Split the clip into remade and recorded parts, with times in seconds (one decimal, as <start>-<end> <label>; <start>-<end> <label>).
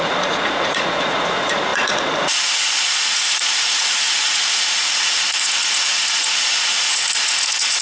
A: 0.0-7.8 remade